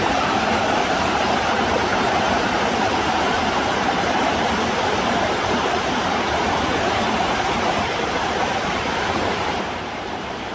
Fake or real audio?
fake